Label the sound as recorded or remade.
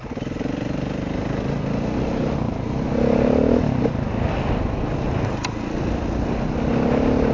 recorded